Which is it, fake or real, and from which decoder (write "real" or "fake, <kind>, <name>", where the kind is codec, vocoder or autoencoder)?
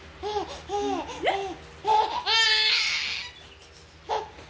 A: real